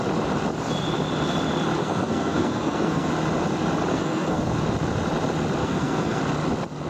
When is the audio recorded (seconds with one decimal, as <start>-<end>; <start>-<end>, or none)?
0.0-1.8; 3.1-3.9; 4.4-5.6; 6.2-6.9